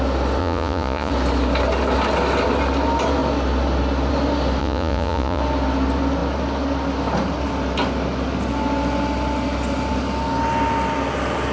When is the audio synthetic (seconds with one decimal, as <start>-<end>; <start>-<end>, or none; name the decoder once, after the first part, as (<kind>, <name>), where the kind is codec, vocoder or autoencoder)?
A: 0.4-1.1 (vocoder, Vocos); 4.6-5.4